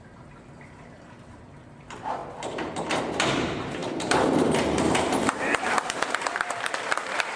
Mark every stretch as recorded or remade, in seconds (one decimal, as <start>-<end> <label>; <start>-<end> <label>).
0.0-7.4 remade